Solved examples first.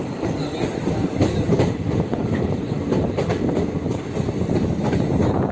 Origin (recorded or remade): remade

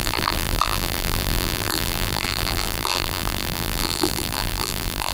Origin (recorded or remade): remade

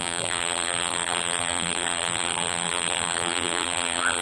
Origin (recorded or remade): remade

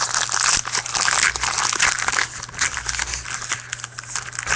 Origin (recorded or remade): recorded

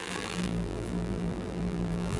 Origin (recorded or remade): remade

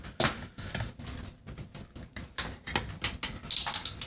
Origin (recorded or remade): recorded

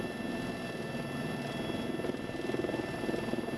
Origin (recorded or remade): recorded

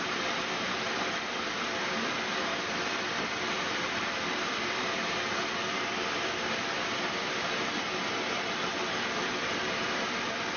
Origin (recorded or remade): remade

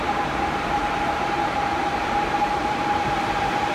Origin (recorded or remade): remade